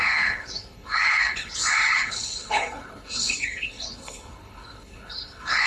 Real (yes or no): no